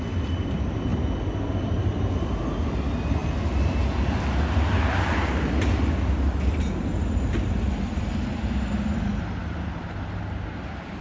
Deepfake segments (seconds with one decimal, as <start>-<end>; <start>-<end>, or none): none